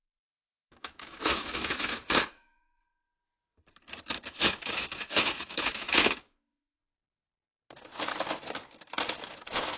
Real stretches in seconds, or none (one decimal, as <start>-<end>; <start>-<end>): 2.8-4.4; 6.8-9.1

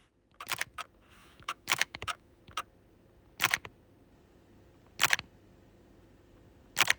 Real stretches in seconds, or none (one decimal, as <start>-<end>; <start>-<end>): 0.0-1.2; 2.4-7.0

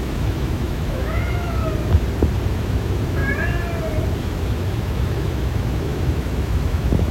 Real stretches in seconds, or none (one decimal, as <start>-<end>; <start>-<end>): 1.6-2.5; 3.2-4.2